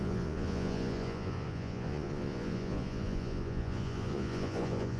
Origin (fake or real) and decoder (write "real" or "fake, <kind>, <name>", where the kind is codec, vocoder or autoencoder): fake, vocoder, Vocos